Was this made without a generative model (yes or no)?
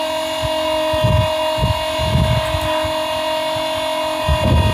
yes